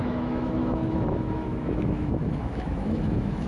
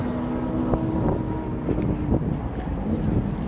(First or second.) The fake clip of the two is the first